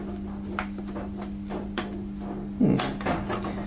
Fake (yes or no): no